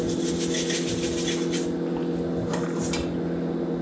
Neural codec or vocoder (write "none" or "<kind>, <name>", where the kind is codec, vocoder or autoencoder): none